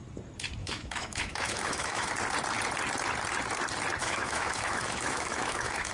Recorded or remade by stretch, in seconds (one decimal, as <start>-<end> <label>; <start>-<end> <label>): 0.0-0.6 recorded; 0.6-2.1 remade; 2.1-4.0 recorded; 4.0-5.9 remade